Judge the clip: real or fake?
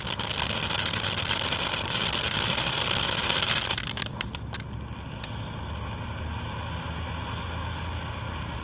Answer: real